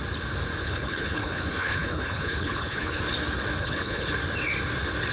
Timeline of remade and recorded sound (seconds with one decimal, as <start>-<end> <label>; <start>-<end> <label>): 0.0-0.6 recorded; 0.6-3.0 remade; 3.0-3.6 recorded; 3.6-4.1 remade; 4.1-5.1 recorded